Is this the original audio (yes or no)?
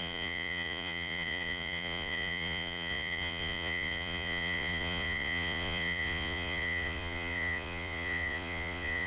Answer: no